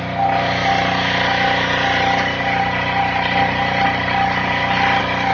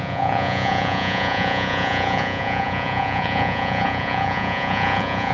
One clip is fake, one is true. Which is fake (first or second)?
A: second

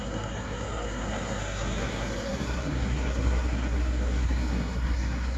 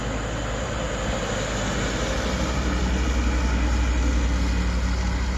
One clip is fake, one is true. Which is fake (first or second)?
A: first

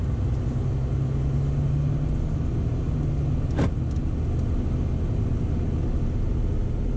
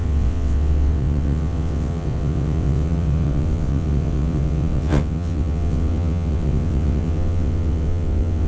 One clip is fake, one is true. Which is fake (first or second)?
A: second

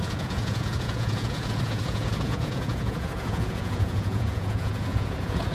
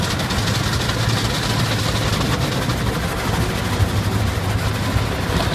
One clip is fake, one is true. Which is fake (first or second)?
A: first